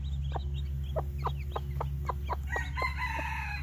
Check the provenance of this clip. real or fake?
real